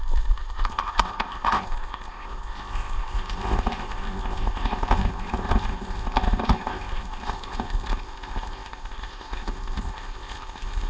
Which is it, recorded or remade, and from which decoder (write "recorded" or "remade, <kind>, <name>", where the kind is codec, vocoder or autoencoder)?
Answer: remade, codec, ZipCodec